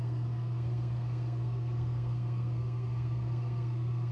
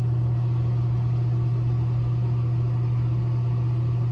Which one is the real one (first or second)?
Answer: second